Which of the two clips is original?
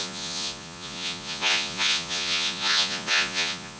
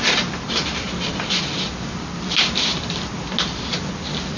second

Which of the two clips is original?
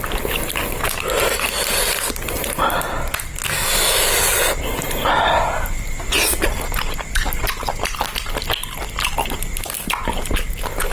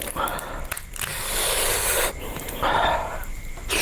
first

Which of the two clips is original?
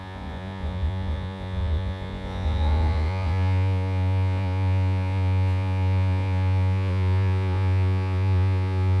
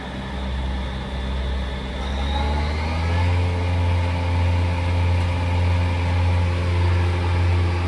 second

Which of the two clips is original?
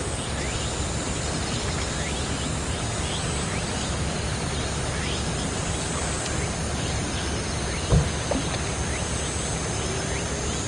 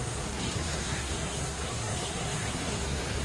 first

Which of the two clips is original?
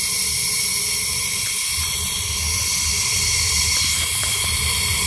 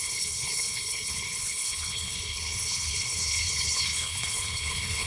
first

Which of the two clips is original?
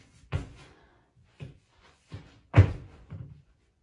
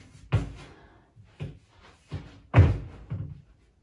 second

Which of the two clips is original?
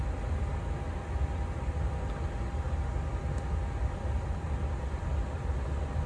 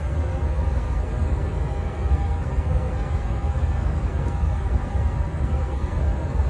first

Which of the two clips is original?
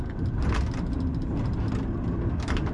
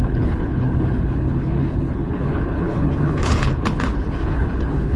first